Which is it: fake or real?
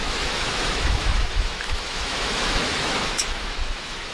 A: fake